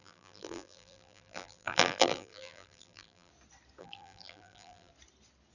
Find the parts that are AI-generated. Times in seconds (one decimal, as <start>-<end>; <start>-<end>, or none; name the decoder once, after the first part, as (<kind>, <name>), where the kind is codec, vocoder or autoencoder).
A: 0.0-3.3 (vocoder, BigVGAN v2); 3.8-4.9